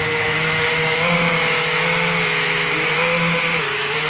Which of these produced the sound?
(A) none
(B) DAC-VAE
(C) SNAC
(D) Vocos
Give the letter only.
B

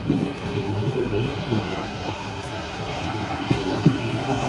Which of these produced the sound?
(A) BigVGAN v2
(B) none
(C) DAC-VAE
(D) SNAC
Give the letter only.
D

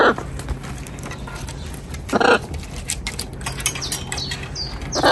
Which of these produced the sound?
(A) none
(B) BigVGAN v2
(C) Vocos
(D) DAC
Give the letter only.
A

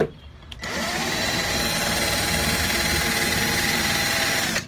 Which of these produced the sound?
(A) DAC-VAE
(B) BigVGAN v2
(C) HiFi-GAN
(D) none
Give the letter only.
B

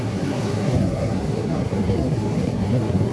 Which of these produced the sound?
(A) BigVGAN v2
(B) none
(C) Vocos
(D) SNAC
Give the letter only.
D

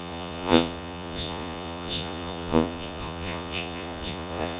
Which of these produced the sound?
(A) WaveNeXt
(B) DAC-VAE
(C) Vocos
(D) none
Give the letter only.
C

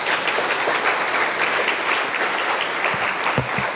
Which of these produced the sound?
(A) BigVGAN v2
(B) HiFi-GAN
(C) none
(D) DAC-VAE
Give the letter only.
C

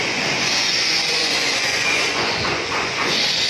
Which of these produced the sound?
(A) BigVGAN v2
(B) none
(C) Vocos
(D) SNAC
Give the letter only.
C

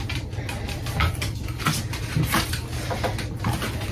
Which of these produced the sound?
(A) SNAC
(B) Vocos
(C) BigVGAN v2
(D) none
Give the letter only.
D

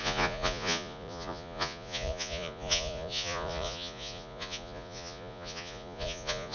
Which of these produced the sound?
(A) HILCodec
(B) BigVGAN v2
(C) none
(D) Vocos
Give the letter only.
D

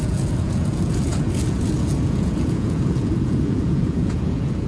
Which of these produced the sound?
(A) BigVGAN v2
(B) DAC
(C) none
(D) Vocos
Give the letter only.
D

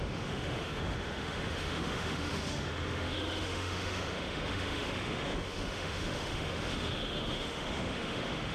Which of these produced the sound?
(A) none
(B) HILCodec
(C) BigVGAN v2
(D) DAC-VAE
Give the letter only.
D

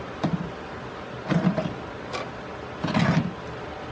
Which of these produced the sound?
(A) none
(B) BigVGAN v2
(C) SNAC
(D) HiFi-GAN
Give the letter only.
A